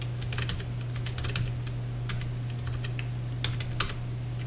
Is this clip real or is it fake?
real